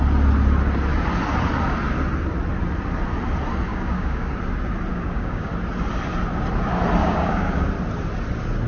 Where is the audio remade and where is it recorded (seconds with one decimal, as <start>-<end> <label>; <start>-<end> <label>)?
0.0-3.7 recorded; 3.7-4.3 remade; 4.3-4.9 recorded; 4.9-5.5 remade; 5.5-7.0 recorded; 7.0-7.7 remade; 7.7-8.7 recorded